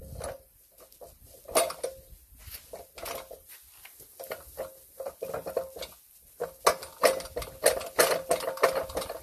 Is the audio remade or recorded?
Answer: recorded